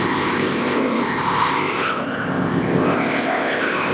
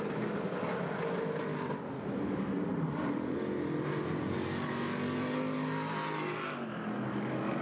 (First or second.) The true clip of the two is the second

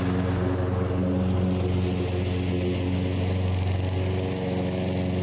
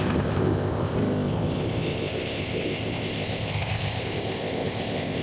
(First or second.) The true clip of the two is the first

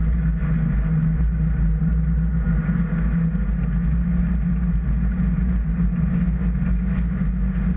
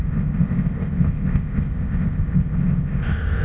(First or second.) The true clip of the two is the first